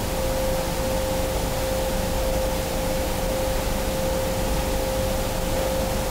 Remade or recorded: recorded